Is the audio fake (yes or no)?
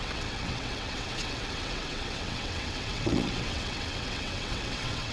yes